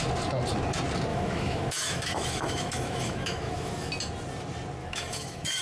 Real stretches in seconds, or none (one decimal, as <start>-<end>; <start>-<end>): 0.0-1.1; 3.9-4.8